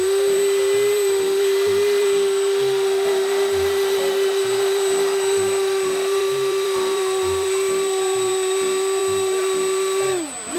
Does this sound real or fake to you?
fake